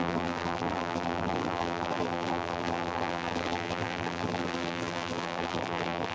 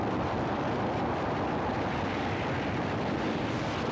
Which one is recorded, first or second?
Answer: second